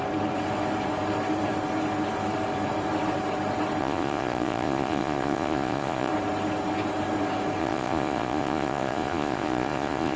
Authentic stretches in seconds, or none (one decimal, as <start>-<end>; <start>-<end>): 0.0-3.8; 6.1-7.6